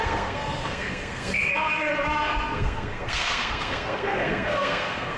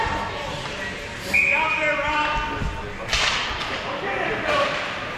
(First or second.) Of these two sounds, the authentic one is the second